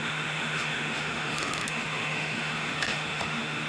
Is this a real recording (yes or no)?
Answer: no